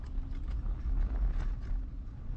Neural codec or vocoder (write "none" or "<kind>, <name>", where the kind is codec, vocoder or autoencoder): none